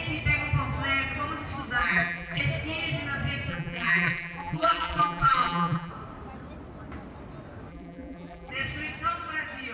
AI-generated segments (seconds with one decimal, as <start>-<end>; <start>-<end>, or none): 1.8-2.4; 3.5-5.9; 7.7-8.5